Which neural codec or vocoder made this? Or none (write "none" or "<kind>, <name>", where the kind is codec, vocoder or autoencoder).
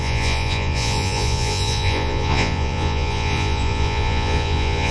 vocoder, Vocos